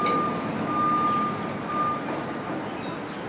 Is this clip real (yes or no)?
yes